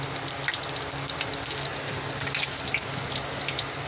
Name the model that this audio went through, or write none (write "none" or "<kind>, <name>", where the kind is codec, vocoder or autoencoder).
none